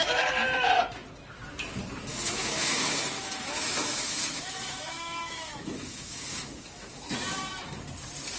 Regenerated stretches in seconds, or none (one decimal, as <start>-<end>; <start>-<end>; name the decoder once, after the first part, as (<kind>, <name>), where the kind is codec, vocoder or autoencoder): 2.1-7.1 (autoencoder, DAC-VAE)